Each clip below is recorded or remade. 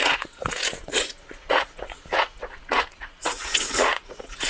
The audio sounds remade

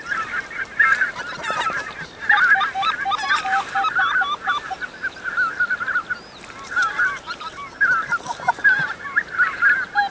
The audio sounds recorded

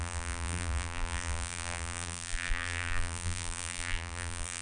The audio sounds remade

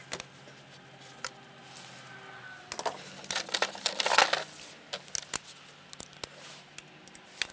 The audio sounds recorded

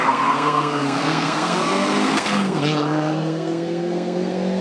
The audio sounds remade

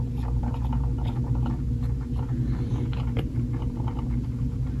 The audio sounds recorded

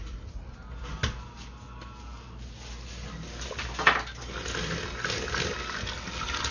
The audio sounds recorded